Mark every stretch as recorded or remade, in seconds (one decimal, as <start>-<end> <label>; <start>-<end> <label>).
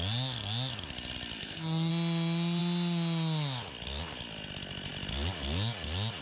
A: 0.0-1.4 recorded; 1.4-1.9 remade; 1.9-6.2 recorded